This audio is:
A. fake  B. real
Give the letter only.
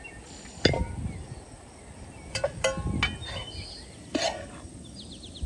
B